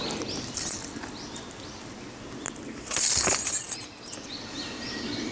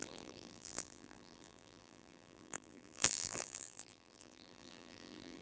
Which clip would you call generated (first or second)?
second